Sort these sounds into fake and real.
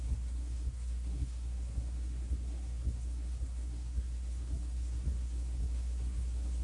fake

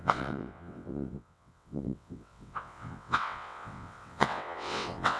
fake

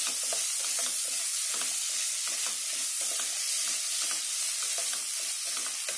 real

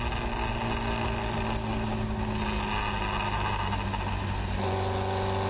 real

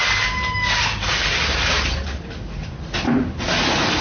real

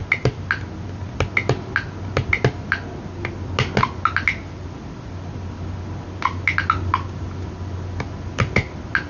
real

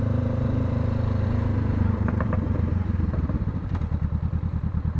fake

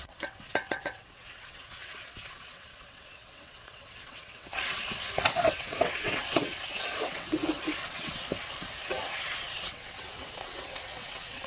fake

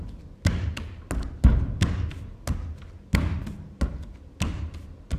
real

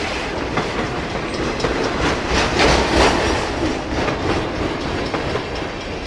real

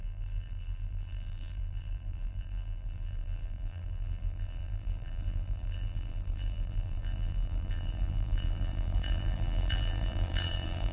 fake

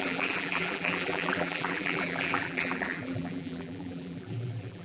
fake